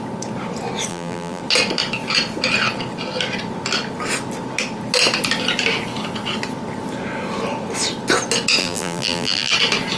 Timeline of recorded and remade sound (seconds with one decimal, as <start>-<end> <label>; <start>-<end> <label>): 0.0-0.9 recorded; 0.9-1.4 remade; 1.4-8.6 recorded; 8.6-9.5 remade; 9.5-10.0 recorded